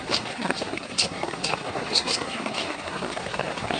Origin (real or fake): fake